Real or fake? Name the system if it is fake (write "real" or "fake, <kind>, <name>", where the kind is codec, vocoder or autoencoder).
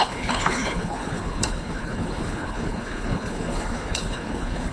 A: fake, codec, HILCodec